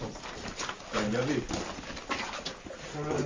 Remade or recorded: recorded